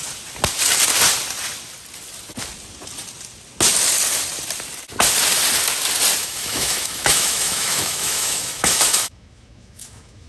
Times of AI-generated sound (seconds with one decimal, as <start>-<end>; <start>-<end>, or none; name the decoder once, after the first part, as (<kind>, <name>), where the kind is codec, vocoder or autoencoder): 6.2-10.3 (autoencoder, DAC-VAE)